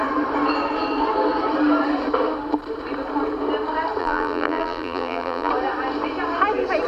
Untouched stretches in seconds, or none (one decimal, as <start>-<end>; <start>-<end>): 0.0-4.0; 5.5-6.9